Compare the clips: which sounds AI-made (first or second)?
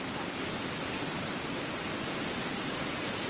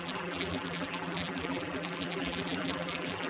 second